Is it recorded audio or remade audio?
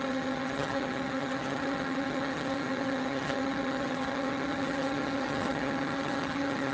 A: remade